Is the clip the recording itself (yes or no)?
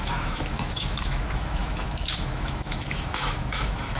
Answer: no